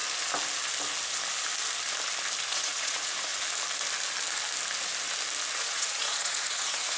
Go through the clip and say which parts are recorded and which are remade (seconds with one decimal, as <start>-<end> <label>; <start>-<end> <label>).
0.0-2.5 recorded; 2.5-3.3 remade; 3.3-5.6 recorded; 5.6-7.0 remade